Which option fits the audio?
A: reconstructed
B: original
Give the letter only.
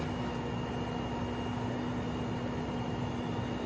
B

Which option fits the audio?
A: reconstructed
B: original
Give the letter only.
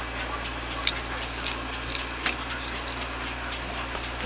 B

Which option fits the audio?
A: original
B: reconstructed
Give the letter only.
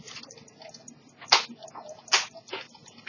A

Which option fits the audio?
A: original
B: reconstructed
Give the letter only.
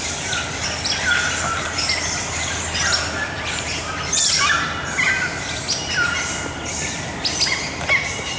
A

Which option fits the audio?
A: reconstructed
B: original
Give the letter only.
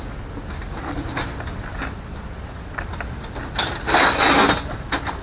B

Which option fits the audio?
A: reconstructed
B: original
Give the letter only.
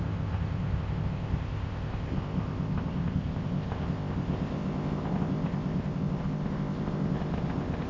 A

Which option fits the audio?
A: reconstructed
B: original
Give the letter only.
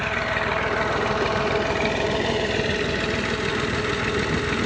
B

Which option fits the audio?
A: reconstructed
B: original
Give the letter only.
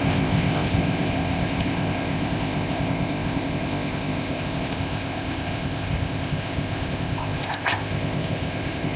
A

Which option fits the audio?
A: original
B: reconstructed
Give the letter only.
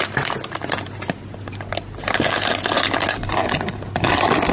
A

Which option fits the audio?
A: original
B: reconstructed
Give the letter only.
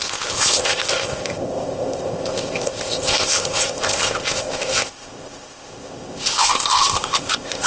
B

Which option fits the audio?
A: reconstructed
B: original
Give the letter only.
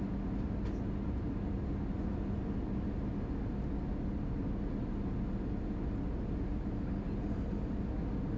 B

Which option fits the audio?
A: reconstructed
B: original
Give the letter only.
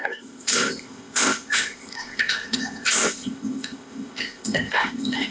A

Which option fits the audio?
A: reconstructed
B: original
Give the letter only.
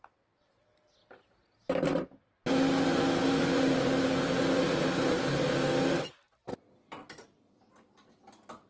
B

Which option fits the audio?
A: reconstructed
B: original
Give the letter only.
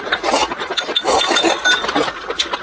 B